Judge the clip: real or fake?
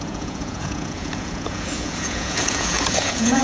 fake